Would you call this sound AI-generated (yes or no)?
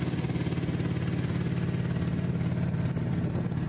no